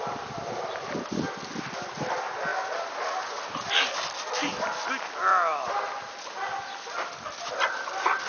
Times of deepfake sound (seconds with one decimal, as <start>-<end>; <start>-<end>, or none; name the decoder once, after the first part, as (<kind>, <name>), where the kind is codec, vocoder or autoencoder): none